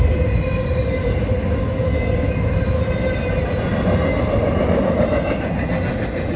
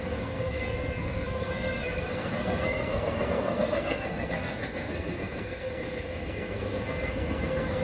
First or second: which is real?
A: first